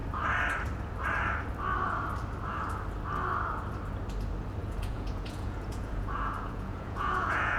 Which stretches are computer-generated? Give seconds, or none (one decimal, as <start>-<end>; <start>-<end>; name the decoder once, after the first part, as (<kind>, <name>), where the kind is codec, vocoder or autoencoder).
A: 4.6-7.6 (vocoder, Vocos)